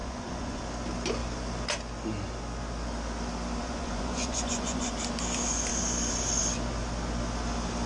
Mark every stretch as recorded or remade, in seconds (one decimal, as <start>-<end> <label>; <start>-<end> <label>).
0.0-0.6 remade; 0.6-3.6 recorded; 3.6-4.9 remade; 4.9-7.9 recorded